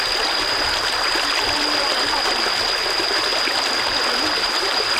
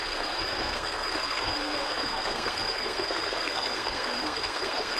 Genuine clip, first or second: first